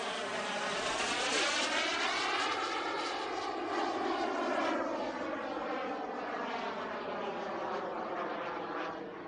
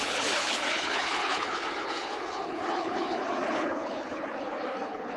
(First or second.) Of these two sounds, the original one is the first